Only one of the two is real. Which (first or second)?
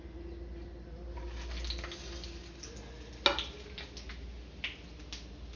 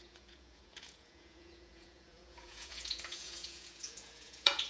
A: first